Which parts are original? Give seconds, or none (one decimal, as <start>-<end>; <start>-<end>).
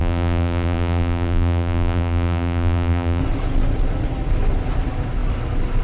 3.2-5.8